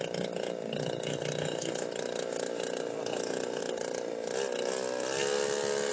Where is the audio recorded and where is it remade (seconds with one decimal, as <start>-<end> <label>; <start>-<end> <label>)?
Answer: 0.0-5.9 recorded